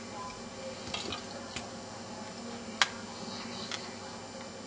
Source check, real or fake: real